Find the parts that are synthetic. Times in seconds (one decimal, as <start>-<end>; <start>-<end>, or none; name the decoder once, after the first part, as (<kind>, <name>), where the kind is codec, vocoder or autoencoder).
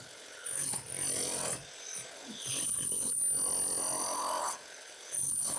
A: 0.0-0.9 (codec, HILCodec); 2.1-3.2; 4.4-5.6